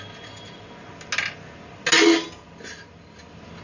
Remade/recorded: recorded